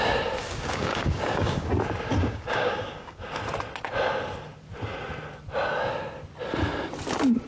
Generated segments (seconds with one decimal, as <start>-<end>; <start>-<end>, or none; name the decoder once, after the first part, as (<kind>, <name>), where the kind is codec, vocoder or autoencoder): 0.4-1.7 (codec, DAC); 2.1-3.4